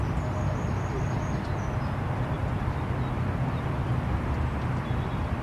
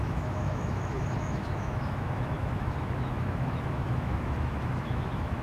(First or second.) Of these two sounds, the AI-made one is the second